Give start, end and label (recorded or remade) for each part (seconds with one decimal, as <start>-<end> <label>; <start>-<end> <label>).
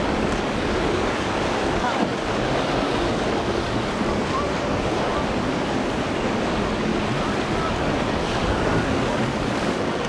0.0-5.1 remade; 5.1-6.1 recorded; 6.1-6.9 remade; 6.9-7.6 recorded; 7.6-10.1 remade